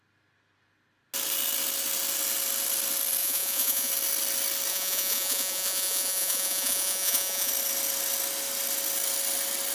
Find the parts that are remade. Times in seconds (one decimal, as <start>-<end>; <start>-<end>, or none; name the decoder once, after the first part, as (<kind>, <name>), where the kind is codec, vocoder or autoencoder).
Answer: 3.2-3.9 (vocoder, Vocos); 4.7-7.5